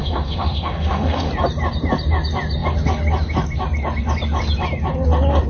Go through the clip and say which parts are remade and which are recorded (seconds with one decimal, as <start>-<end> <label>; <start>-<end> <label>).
0.0-1.3 remade; 1.3-5.5 recorded